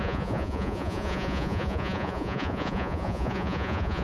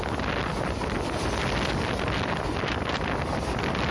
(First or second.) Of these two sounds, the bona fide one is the second